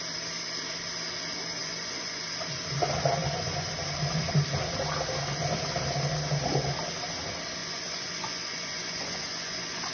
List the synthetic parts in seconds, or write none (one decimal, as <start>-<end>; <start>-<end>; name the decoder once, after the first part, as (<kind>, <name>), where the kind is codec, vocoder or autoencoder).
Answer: 1.6-2.2 (vocoder, Vocos); 3.2-3.7; 7.6-9.9